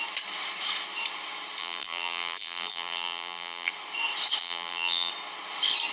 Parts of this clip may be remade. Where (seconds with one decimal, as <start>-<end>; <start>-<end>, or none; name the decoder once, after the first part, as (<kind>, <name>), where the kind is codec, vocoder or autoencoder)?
1.6-3.7 (vocoder, BigVGAN v2); 4.4-5.1